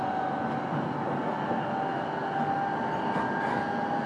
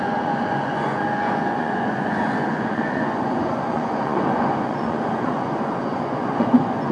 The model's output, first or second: second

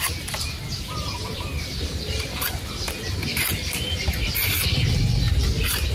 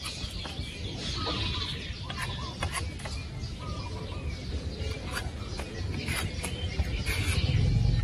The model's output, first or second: first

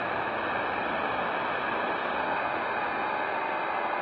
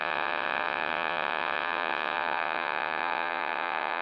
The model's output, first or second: second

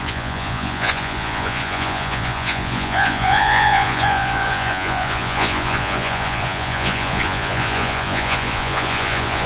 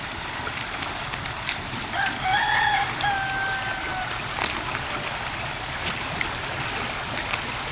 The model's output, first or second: first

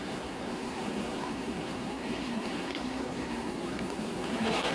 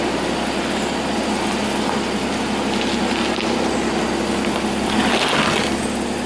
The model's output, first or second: first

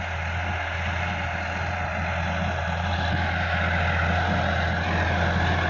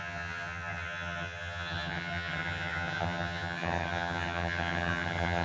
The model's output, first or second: second